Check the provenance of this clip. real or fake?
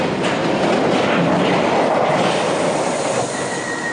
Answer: real